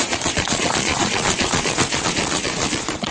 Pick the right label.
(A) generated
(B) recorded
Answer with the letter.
A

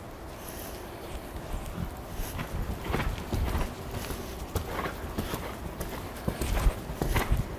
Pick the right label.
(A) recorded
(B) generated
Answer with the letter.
A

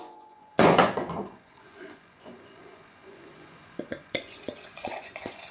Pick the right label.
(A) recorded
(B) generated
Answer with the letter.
B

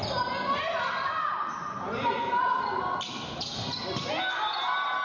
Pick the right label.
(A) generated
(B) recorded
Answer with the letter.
B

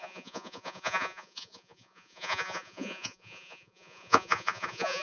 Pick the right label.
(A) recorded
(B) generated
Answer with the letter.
B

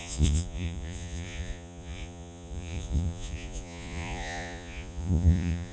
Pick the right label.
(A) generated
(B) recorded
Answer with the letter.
A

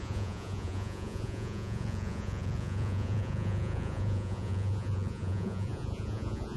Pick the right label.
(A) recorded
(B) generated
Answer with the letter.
B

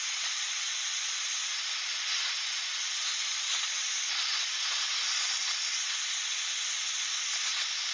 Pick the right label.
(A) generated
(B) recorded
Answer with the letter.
A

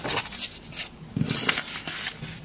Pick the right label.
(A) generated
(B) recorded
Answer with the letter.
B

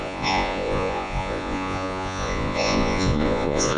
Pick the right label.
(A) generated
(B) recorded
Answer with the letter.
A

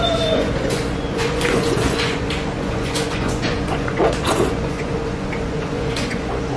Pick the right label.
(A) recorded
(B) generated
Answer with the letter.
B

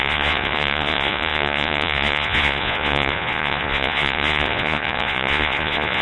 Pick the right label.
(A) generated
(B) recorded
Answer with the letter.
A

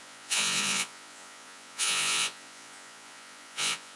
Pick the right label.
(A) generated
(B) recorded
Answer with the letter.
A